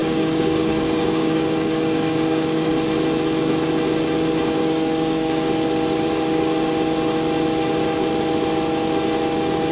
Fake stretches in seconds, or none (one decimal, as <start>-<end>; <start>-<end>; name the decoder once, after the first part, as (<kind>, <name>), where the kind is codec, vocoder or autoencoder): 0.0-2.7 (codec, DAC); 4.6-5.5

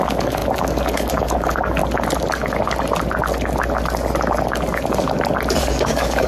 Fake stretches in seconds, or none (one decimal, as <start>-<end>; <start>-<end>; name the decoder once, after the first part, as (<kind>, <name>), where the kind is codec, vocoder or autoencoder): 0.0-1.8 (codec, DAC); 5.6-6.3

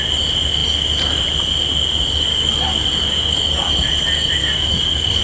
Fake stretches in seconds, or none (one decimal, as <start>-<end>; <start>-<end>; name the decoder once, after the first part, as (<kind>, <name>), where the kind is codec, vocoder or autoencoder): 2.3-2.9 (codec, DAC); 4.4-5.2

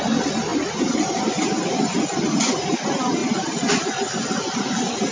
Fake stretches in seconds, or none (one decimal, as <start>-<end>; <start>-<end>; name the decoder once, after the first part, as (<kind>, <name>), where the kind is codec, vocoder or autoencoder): none

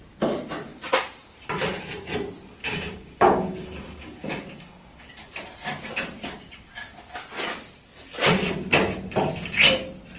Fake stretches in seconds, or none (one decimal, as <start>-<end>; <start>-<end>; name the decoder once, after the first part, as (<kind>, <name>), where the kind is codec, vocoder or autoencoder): 2.6-5.1 (codec, DAC)

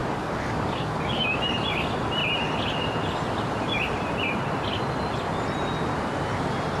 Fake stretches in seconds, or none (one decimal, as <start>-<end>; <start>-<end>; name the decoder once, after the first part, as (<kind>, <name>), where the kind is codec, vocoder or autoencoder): 0.0-1.4 (codec, DAC)

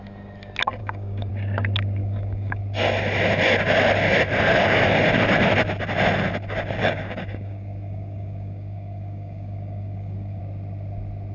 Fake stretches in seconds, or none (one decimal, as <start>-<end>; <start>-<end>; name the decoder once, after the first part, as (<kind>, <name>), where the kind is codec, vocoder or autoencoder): 0.8-1.3 (codec, DAC); 2.0-2.6; 6.8-10.4

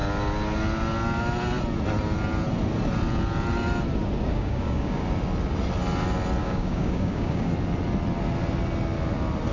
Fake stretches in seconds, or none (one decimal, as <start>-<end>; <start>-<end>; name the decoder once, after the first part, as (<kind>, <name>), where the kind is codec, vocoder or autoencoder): 4.3-5.0 (codec, DAC); 6.4-7.5